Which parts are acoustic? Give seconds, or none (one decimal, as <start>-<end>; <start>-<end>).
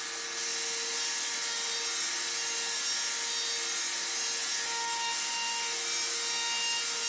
0.0-7.1